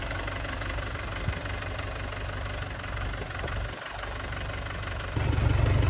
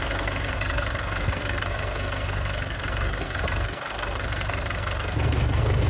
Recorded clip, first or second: first